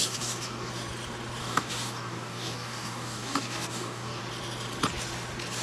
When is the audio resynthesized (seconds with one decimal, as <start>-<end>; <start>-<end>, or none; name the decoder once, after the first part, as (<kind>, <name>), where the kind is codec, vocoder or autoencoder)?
0.0-0.7 (codec, DAC); 1.4-4.2

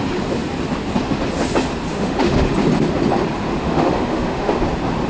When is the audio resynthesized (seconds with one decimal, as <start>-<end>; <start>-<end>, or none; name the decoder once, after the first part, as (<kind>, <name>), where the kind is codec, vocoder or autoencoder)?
1.9-2.5 (autoencoder, DAC-VAE); 3.5-4.5

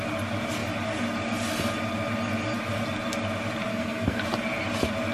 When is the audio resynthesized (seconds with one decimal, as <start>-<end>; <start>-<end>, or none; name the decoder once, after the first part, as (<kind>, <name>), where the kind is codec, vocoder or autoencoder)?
3.7-4.2 (codec, SNAC)